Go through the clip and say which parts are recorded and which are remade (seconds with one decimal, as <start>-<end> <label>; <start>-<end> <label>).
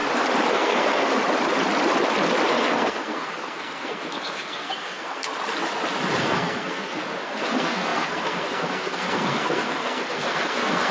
0.0-0.5 recorded; 0.5-1.1 remade; 1.1-2.5 recorded; 2.5-5.3 remade; 5.3-6.2 recorded; 6.2-10.9 remade